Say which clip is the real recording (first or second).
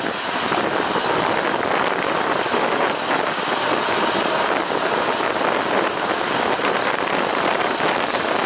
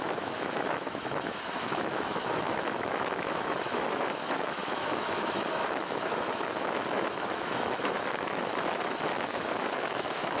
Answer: first